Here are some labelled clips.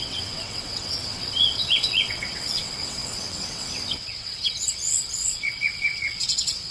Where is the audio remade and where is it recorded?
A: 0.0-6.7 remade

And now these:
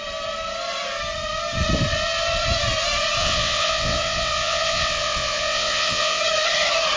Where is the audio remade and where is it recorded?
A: 0.0-3.2 recorded; 3.2-6.2 remade; 6.2-7.0 recorded

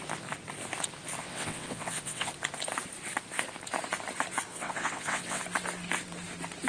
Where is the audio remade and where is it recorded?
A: 0.0-1.2 recorded; 1.2-2.3 remade; 2.3-4.5 recorded; 4.5-5.4 remade; 5.4-6.7 recorded

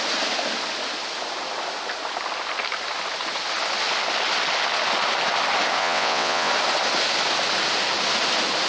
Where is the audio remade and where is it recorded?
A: 0.0-5.8 recorded; 5.8-6.5 remade; 6.5-8.7 recorded